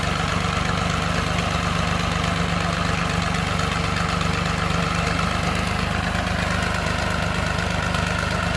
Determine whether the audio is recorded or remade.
recorded